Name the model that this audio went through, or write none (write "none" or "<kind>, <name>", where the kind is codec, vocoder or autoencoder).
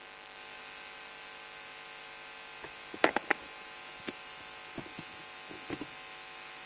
none